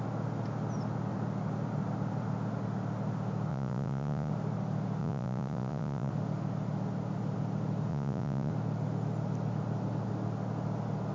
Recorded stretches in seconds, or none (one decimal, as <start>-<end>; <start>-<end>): 0.0-3.5; 4.3-5.0; 6.1-7.9; 8.5-11.1